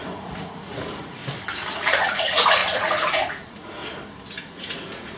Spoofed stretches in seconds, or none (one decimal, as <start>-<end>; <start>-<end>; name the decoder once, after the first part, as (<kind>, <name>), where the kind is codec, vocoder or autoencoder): 0.0-1.2 (vocoder, Vocos); 1.7-3.8; 4.4-5.2